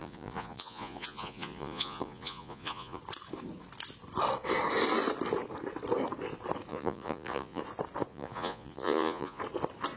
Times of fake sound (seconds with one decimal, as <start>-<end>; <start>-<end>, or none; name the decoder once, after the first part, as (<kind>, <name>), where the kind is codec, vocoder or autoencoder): 0.0-3.0 (vocoder, Vocos); 6.7-7.6; 8.1-9.4